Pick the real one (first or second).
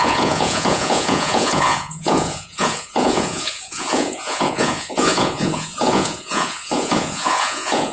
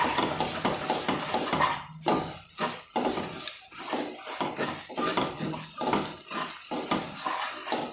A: second